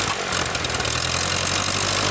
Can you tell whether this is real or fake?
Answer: real